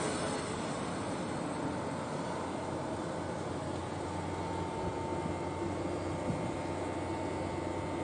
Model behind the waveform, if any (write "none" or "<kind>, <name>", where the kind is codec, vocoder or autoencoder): none